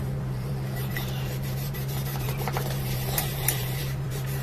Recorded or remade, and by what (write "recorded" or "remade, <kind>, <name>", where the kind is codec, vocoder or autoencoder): remade, vocoder, BigVGAN v2